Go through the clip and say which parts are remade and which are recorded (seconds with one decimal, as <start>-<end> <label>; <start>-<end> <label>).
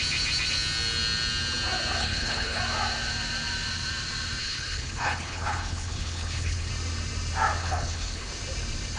0.0-2.0 recorded; 2.0-2.6 remade; 2.6-4.4 recorded; 4.4-6.7 remade; 6.7-7.6 recorded; 7.6-8.3 remade; 8.3-9.0 recorded